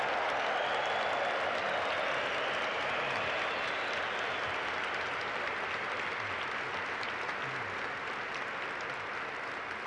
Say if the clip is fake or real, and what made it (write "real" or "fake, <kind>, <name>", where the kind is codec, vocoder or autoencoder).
real